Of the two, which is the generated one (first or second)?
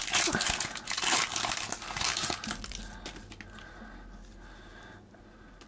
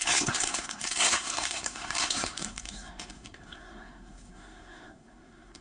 second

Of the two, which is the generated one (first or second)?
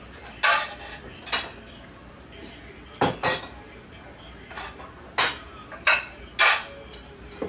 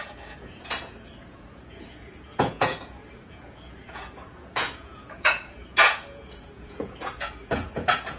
second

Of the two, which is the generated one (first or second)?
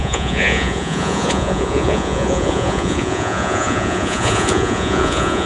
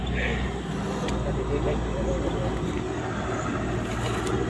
first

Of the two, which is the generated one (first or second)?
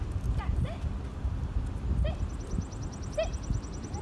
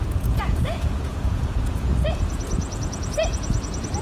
second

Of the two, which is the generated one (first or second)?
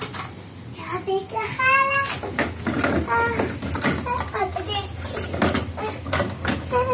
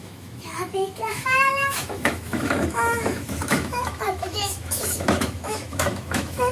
second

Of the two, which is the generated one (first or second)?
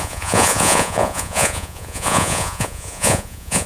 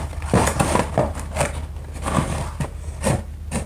first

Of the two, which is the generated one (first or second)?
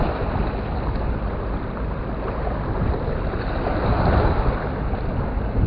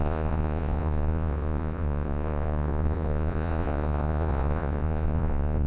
second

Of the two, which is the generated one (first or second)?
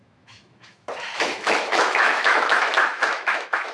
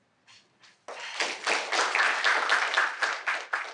first